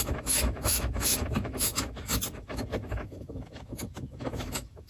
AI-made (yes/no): yes